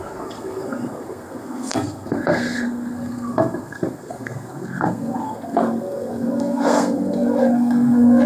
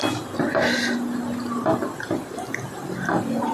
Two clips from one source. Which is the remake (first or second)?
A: first